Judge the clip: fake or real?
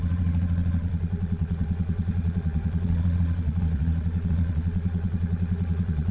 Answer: fake